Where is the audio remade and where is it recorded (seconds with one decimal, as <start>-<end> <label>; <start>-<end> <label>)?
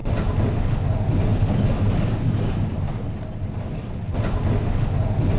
0.0-0.5 remade; 0.5-5.4 recorded